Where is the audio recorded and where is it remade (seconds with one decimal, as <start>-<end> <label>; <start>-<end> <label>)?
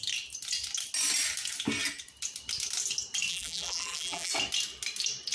0.0-3.3 recorded; 3.3-4.3 remade; 4.3-5.3 recorded